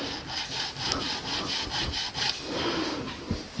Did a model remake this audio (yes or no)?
no